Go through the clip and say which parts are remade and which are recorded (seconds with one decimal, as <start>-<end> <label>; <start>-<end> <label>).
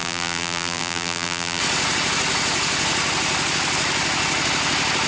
0.0-1.6 remade; 1.6-5.1 recorded